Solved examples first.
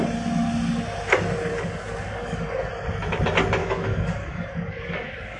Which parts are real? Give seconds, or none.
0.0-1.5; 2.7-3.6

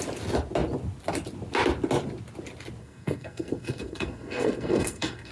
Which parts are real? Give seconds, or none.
0.0-2.8